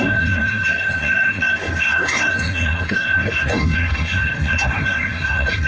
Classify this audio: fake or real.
fake